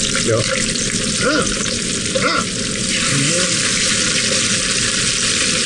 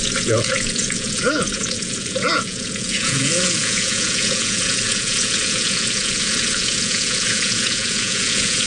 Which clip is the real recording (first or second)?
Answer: first